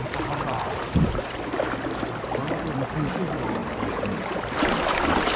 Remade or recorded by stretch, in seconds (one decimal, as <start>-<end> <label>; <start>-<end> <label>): 0.0-2.4 remade; 2.4-3.1 recorded; 3.1-5.4 remade

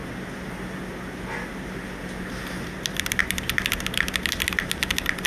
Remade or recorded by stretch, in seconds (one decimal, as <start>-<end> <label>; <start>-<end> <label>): 0.0-5.3 recorded

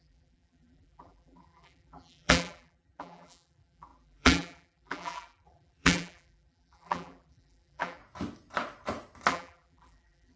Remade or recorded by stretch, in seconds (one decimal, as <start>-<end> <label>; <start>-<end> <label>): 0.0-8.0 remade; 8.0-9.3 recorded; 9.3-10.4 remade

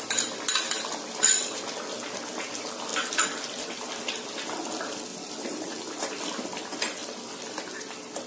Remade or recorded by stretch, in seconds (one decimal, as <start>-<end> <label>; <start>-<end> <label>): 0.0-5.1 recorded; 5.1-6.6 remade; 6.6-8.3 recorded

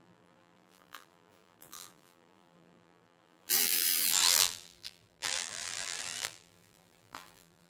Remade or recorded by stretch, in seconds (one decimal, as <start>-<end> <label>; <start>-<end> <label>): 0.0-7.7 remade

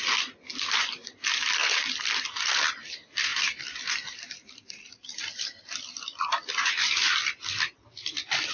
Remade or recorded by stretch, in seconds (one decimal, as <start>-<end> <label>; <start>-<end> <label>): 0.0-1.6 remade; 1.6-2.4 recorded; 2.4-8.5 remade